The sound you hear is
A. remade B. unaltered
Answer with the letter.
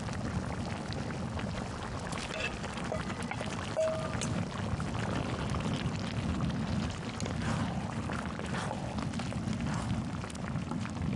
B